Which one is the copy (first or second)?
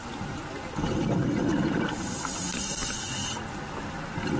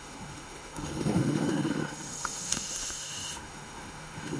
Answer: second